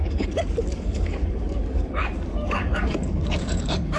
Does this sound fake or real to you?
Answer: fake